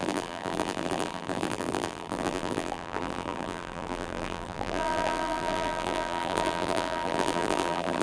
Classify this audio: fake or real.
fake